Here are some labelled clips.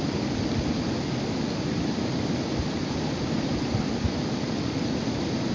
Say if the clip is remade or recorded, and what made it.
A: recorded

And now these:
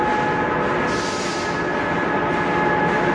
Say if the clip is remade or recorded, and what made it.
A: recorded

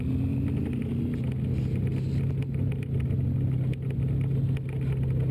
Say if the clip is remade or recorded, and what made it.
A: recorded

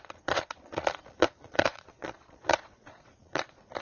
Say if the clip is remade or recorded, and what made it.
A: remade, vocoder, Vocos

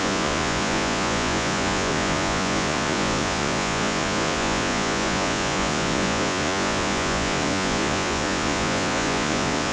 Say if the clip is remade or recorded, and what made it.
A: remade, vocoder, Vocos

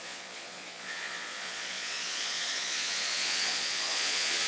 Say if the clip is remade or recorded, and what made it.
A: remade, vocoder, Vocos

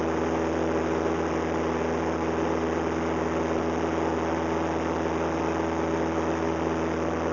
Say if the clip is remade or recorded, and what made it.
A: recorded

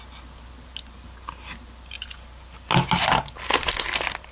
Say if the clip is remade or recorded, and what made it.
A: recorded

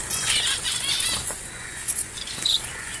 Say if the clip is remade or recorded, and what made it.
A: remade, vocoder, Vocos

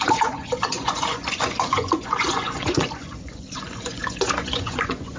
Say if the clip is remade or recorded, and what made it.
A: remade, vocoder, Vocos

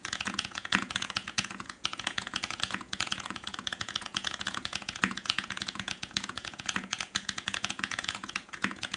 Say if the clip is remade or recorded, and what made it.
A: remade, vocoder, Vocos